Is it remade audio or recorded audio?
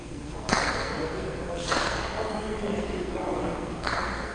remade